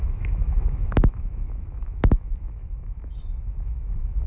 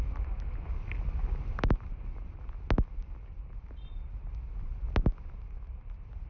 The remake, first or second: first